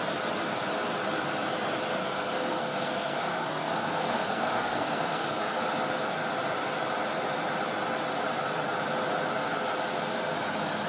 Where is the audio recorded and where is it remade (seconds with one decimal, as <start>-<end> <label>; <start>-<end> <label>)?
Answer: 0.0-2.0 recorded; 2.0-5.6 remade; 5.6-10.9 recorded